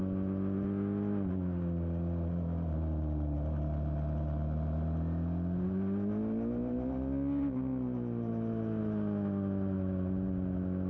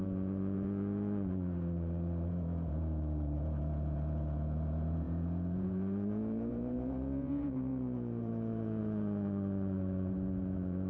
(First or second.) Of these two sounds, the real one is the first